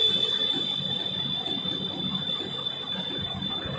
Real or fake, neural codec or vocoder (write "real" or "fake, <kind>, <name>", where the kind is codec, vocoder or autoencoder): real